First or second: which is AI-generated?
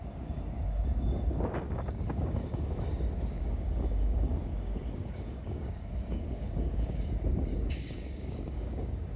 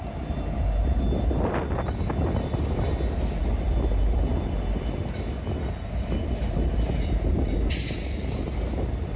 first